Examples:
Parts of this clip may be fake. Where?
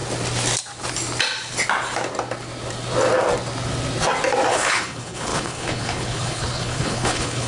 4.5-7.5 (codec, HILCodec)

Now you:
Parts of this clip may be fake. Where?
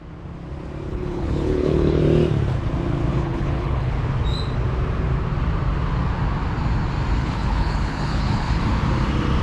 0.9-2.0 (codec, HILCodec); 3.1-3.9; 7.2-8.6